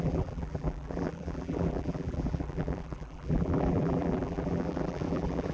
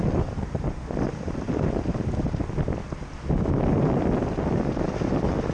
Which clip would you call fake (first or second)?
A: first